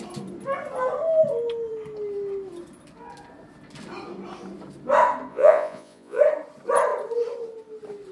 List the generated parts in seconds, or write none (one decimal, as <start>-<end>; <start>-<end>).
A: 5.3-6.2